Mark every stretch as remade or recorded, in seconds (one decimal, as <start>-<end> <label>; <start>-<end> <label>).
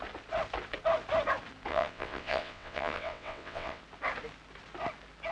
0.0-1.7 recorded; 1.7-3.8 remade; 3.8-5.3 recorded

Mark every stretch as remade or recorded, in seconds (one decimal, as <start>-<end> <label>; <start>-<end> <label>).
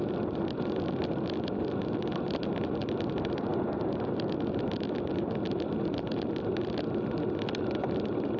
0.0-8.4 recorded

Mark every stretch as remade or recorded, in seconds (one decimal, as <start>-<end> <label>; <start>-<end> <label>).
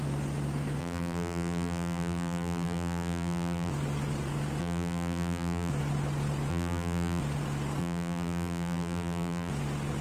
0.0-0.8 recorded; 0.8-3.7 remade; 3.7-4.6 recorded; 4.6-5.7 remade; 5.7-6.5 recorded; 6.5-7.2 remade; 7.2-7.8 recorded; 7.8-9.5 remade; 9.5-10.0 recorded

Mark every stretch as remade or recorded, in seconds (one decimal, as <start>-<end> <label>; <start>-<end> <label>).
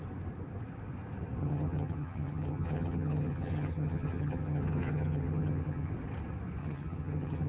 0.0-1.4 recorded; 1.4-5.9 remade; 5.9-6.6 recorded; 6.6-7.5 remade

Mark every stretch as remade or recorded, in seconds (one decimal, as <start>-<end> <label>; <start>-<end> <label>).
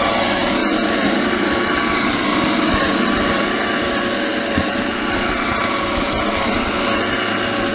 0.0-0.6 recorded; 0.6-1.8 remade; 1.8-2.3 recorded; 2.3-3.8 remade; 3.8-7.7 recorded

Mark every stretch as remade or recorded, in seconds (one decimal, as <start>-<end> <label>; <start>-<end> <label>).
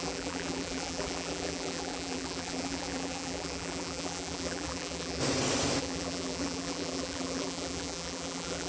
0.0-5.2 remade; 5.2-5.8 recorded; 5.8-8.7 remade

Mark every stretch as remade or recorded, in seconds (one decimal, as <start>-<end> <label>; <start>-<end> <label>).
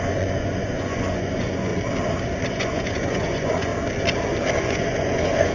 0.0-1.7 remade; 1.7-2.5 recorded; 2.5-3.7 remade; 3.7-4.6 recorded; 4.6-5.5 remade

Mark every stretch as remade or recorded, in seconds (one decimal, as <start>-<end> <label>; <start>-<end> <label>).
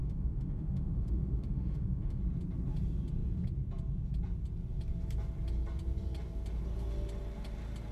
0.0-2.2 remade; 2.2-7.9 recorded